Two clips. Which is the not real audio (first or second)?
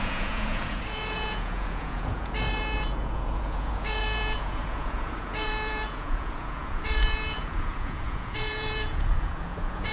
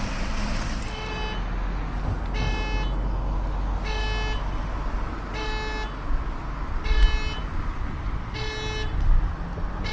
first